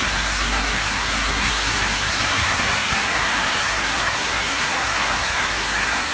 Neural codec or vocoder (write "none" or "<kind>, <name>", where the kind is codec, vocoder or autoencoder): codec, SNAC